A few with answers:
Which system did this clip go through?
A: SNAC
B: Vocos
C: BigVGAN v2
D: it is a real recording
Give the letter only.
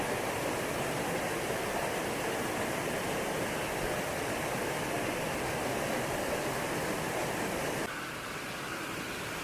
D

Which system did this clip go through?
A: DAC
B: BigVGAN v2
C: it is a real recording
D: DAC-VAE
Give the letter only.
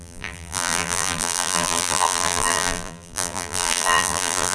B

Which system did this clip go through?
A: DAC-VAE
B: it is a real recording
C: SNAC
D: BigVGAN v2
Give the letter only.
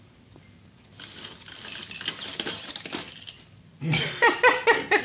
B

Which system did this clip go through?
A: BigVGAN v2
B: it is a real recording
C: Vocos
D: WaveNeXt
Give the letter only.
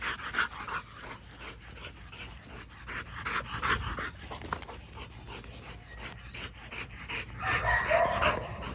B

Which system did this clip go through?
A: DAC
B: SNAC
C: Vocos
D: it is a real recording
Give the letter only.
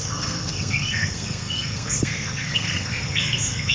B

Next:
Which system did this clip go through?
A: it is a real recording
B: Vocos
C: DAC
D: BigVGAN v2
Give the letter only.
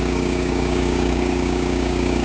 C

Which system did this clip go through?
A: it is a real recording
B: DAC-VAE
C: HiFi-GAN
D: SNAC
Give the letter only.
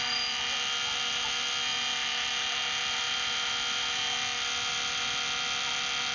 A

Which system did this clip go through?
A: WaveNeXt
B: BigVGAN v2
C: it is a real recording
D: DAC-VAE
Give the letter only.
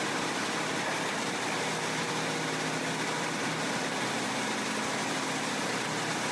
C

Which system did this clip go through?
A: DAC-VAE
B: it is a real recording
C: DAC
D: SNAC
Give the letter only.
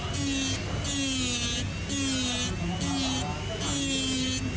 B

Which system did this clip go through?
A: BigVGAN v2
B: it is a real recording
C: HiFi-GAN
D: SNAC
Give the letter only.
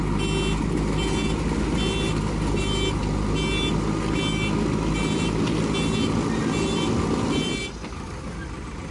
B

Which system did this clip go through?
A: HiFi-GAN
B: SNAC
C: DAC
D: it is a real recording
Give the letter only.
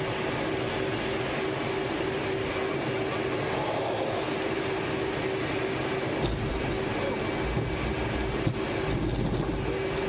D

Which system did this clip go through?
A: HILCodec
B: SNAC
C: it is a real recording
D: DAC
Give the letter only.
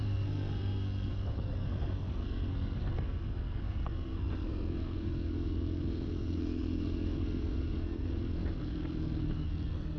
B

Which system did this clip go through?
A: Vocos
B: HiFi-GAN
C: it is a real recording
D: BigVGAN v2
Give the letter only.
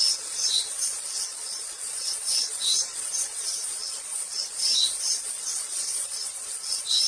A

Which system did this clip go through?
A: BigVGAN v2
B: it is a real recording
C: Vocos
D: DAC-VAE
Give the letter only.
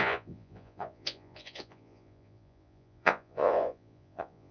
C